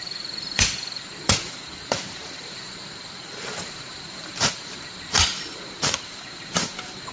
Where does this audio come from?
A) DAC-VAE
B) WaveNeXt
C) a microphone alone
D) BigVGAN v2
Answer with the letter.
D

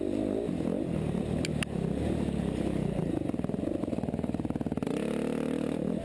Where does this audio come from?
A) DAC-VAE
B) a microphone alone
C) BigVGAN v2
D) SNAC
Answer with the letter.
B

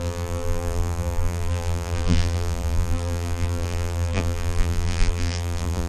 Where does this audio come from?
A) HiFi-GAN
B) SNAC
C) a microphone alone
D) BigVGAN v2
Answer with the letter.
D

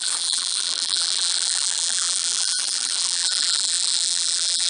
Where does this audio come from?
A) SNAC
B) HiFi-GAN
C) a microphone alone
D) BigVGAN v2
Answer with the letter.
D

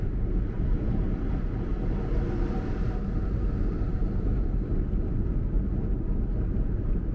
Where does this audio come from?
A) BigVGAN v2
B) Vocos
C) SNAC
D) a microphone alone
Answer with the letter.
D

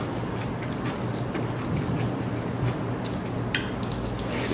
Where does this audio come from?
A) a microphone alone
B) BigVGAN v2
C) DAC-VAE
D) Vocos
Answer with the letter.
A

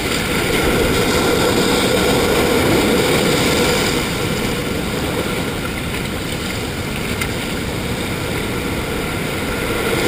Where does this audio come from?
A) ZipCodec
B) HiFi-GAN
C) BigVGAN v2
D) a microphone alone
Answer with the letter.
D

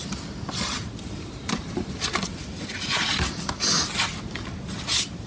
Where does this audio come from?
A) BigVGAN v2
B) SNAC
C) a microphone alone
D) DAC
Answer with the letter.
C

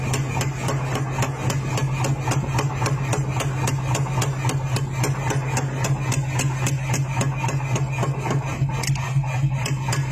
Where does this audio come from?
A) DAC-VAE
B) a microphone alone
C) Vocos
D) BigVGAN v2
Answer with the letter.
B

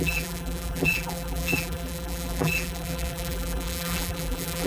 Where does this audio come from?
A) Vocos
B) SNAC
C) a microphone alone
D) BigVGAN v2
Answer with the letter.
D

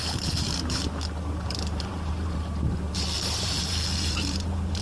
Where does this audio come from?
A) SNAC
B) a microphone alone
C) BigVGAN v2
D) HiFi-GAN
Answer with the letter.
C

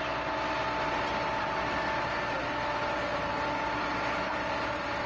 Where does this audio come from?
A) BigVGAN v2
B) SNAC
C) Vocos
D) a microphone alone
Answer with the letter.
D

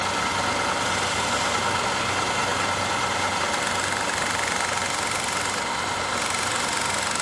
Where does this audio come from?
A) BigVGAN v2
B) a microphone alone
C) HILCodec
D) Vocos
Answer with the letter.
B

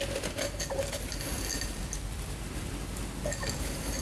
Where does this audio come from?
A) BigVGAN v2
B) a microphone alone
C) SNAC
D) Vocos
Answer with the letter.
B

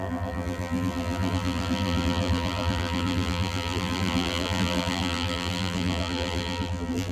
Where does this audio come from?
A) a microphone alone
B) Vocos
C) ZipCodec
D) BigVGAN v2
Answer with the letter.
D